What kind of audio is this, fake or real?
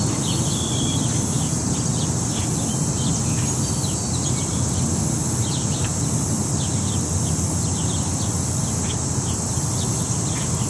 real